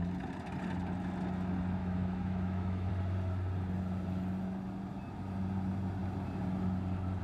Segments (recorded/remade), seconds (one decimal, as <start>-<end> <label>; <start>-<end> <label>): 0.0-1.8 recorded; 1.8-2.9 remade; 2.9-7.2 recorded